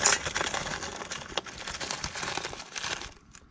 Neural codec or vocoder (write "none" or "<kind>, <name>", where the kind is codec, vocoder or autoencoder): none